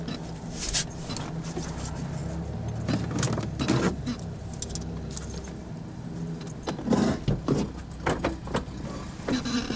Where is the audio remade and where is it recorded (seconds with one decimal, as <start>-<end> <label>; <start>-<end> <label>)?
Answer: 0.0-9.8 recorded